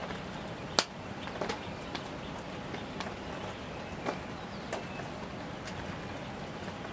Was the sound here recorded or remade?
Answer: recorded